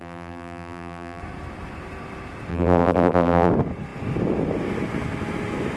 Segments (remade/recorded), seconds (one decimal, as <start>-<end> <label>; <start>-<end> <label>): 0.0-1.2 remade; 1.2-2.5 recorded; 2.5-3.5 remade; 3.5-5.8 recorded